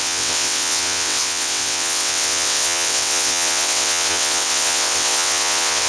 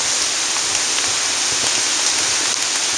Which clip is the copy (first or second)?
first